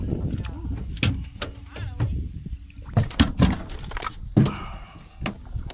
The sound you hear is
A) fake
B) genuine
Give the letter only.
B